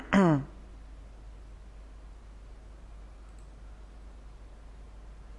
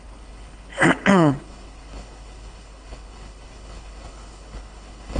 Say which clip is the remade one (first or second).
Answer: second